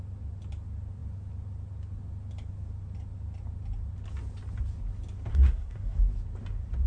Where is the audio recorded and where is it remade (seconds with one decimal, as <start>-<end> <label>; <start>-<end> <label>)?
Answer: 0.0-5.3 recorded; 5.3-6.0 remade; 6.0-6.9 recorded